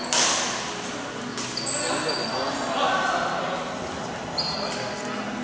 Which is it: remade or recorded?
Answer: recorded